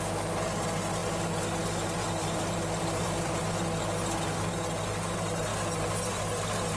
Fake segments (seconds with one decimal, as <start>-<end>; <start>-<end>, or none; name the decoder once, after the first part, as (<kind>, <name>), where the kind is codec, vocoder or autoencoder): 2.0-3.4 (vocoder, BigVGAN v2); 5.5-6.1